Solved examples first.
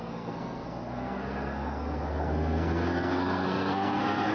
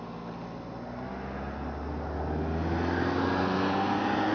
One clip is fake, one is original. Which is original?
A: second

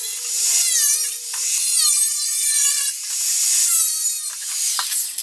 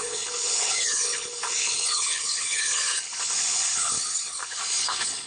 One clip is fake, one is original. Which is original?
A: first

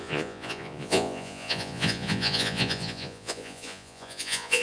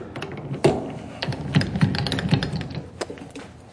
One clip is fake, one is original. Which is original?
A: second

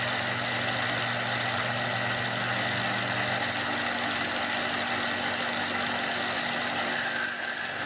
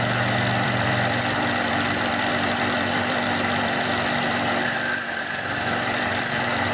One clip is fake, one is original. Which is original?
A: first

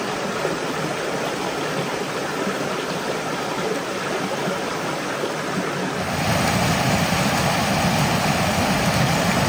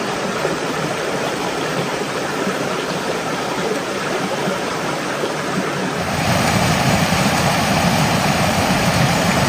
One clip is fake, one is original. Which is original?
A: first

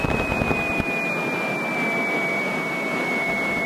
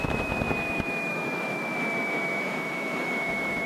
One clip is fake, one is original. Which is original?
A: first